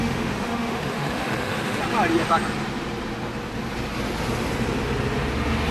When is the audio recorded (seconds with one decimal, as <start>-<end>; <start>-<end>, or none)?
1.8-5.7